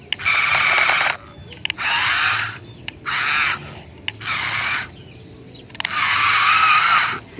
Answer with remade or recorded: recorded